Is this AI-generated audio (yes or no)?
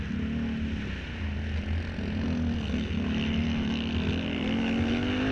no